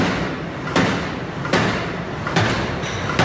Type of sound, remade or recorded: recorded